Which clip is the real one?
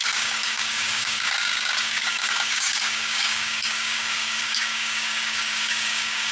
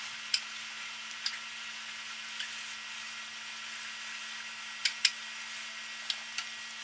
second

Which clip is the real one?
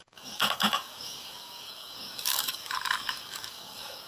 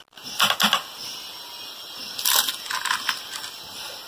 second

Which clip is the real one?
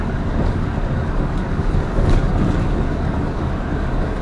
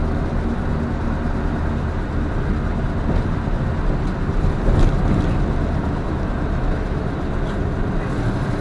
second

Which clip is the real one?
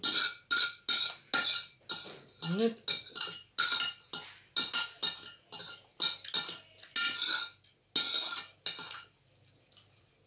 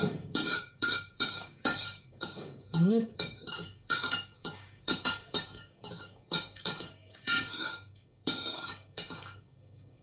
first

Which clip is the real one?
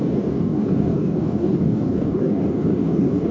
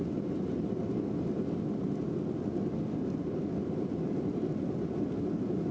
second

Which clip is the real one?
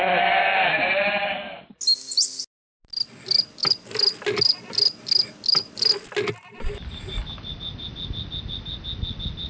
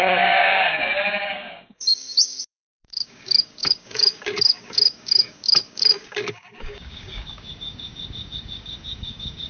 first